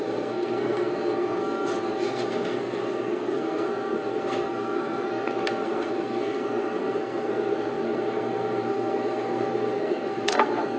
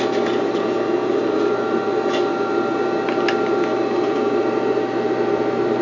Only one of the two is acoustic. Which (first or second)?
second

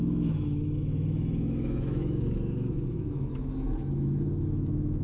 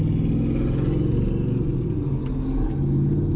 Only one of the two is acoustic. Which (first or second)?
second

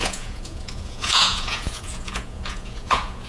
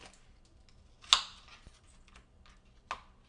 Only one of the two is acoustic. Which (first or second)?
second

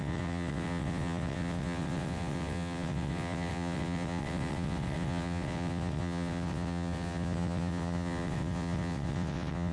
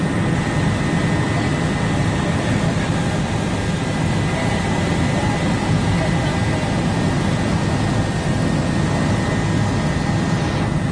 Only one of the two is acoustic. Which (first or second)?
second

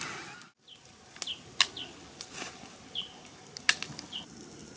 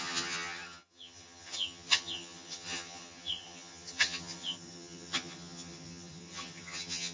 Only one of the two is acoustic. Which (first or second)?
first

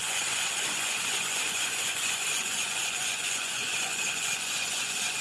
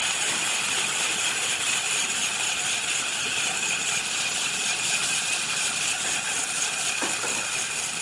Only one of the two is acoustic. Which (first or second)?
second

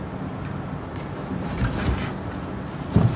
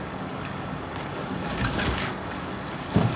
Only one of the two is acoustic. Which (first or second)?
first